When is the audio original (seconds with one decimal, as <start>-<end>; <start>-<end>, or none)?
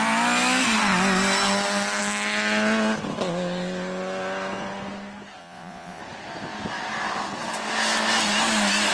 0.0-5.4; 6.0-8.9